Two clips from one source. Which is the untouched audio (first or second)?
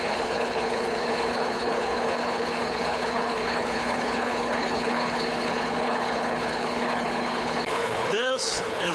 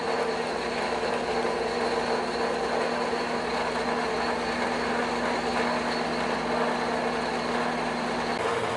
second